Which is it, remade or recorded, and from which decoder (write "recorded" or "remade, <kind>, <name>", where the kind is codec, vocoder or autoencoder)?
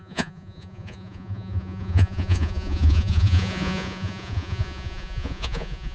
remade, vocoder, Vocos